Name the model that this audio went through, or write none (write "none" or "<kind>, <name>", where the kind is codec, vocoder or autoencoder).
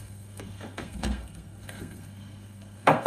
codec, SNAC